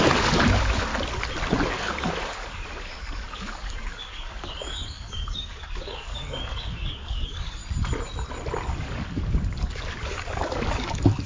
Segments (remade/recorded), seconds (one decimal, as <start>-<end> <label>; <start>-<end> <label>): 0.0-0.9 remade; 0.9-1.7 recorded; 1.7-7.6 remade; 7.6-8.8 recorded; 8.8-11.3 remade